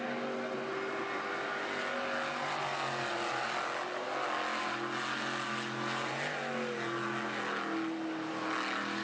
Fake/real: real